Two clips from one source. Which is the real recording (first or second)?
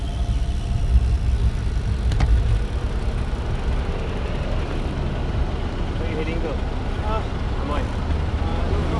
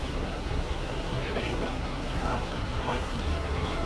first